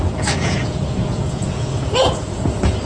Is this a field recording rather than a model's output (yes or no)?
no